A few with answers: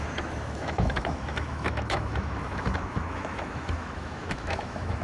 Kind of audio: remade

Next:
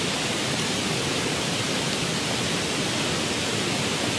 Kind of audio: recorded